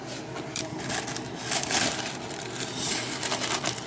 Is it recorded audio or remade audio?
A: recorded